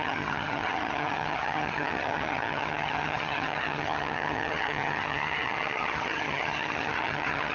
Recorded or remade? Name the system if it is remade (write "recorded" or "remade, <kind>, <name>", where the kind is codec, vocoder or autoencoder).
remade, vocoder, HiFi-GAN